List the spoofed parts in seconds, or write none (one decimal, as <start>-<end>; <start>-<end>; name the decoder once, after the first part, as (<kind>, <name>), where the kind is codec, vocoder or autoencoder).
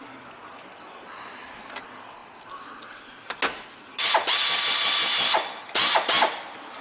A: none